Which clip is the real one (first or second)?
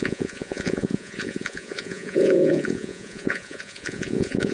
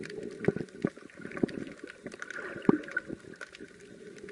second